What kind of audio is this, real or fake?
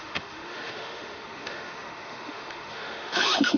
fake